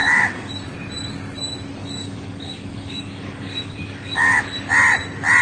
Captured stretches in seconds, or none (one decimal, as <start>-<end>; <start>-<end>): 0.5-1.8; 4.4-5.4